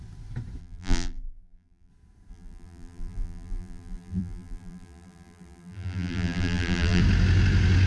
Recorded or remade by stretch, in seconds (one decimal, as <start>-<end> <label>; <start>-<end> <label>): 0.0-0.6 recorded; 0.6-1.9 remade; 1.9-2.3 recorded; 2.3-7.0 remade; 7.0-7.9 recorded